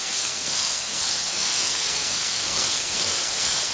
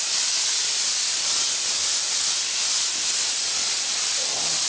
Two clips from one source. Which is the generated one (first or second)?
first